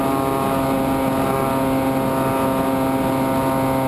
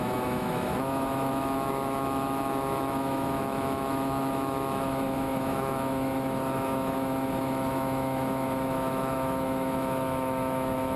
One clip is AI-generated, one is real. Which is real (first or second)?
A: first